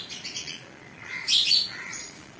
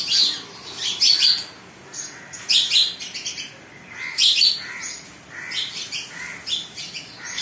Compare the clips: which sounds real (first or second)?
second